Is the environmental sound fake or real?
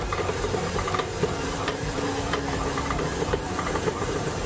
fake